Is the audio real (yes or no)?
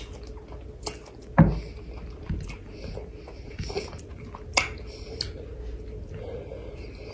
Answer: yes